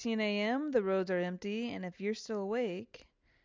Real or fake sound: real